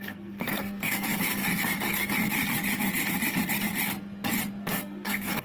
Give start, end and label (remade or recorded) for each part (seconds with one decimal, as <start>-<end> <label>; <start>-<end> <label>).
0.0-1.4 remade; 1.4-4.6 recorded; 4.6-5.4 remade